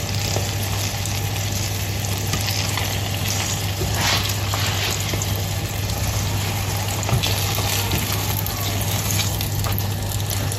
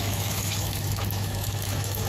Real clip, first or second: first